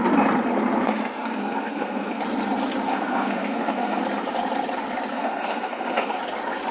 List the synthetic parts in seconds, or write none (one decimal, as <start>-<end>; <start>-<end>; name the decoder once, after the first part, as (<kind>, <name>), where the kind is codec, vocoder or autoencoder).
0.9-2.2 (codec, SNAC); 2.9-4.0; 5.1-6.2